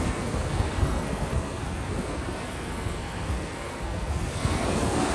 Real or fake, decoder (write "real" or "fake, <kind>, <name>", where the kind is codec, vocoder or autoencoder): fake, codec, SNAC